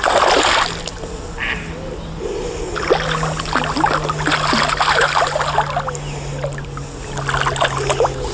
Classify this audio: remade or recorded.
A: recorded